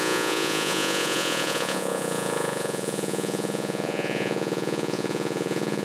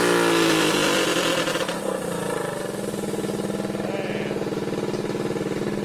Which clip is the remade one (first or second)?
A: first